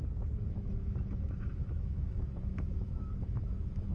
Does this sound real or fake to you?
fake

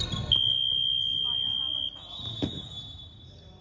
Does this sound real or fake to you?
real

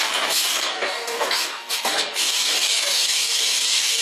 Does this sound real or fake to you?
fake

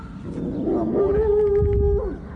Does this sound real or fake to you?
real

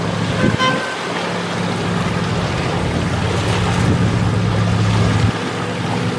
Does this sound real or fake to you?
real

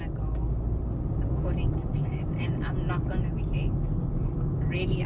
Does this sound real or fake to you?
real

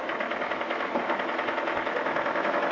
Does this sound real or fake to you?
fake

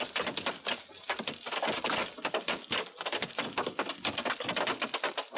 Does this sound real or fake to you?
real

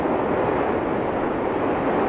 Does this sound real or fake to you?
real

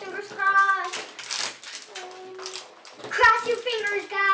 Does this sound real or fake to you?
real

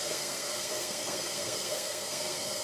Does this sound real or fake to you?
fake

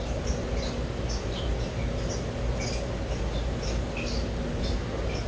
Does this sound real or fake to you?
real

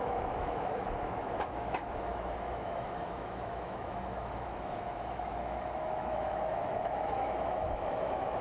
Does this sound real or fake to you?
fake